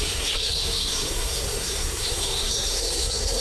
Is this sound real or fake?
fake